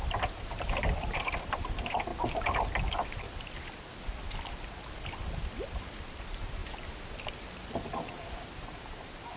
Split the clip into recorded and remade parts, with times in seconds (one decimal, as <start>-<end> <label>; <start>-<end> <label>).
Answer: 0.0-2.1 remade; 2.1-5.7 recorded; 5.7-6.6 remade; 6.6-8.6 recorded; 8.6-9.4 remade